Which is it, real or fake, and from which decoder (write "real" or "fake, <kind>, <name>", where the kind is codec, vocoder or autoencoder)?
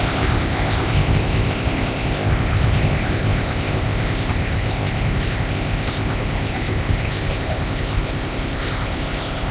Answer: fake, codec, ZipCodec